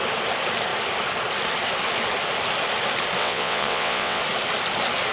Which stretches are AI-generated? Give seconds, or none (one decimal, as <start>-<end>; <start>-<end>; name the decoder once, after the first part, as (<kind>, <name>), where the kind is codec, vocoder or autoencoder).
3.2-4.2 (vocoder, WaveNeXt)